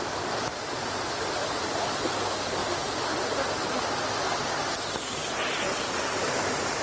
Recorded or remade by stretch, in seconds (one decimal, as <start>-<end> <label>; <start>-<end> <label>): 0.0-6.8 recorded